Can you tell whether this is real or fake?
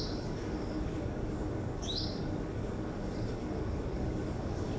fake